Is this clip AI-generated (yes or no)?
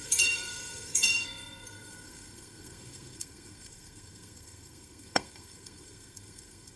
yes